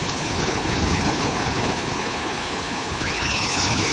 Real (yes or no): no